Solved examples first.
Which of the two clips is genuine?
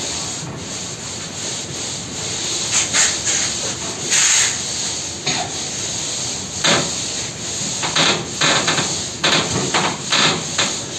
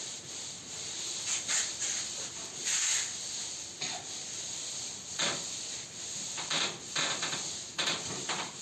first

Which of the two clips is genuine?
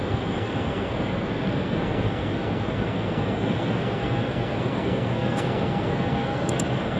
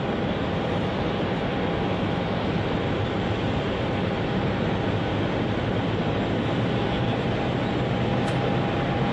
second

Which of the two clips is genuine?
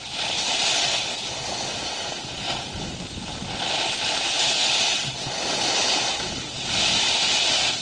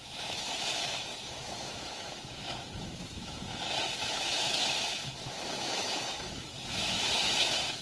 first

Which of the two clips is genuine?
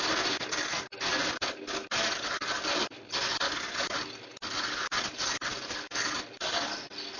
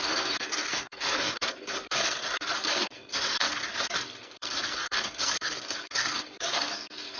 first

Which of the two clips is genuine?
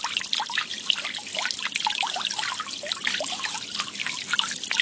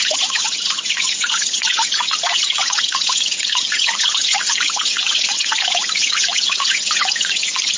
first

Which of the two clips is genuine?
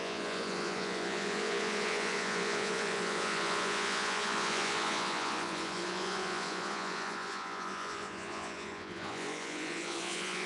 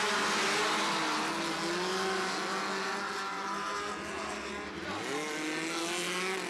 second